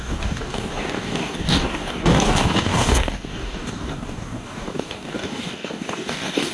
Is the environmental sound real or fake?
fake